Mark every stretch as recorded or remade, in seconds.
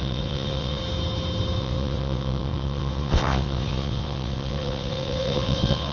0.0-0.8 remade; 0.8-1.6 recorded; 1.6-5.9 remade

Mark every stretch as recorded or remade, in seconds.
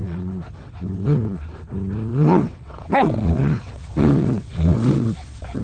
0.0-1.7 remade; 1.7-2.1 recorded; 2.1-5.6 remade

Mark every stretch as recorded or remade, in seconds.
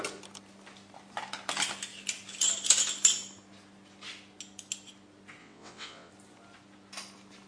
0.0-5.4 recorded; 5.4-6.1 remade; 6.1-7.5 recorded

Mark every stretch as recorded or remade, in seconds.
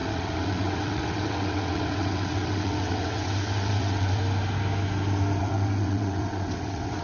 0.0-4.2 remade; 4.2-5.4 recorded; 5.4-7.0 remade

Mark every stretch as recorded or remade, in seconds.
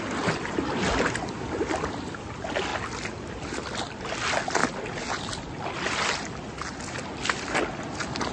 0.0-8.3 recorded